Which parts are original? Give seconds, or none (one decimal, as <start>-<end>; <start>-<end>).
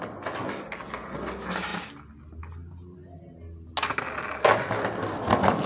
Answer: 0.0-5.7